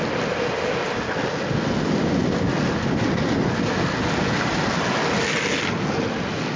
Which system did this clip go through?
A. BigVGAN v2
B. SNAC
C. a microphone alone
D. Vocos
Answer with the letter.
C